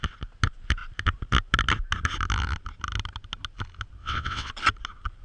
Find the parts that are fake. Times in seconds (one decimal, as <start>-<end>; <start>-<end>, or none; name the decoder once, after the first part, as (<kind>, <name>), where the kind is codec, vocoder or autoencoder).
4.0-4.5 (vocoder, WaveNeXt)